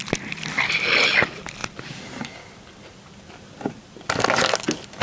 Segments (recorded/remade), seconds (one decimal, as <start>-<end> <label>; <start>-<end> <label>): 0.0-5.0 recorded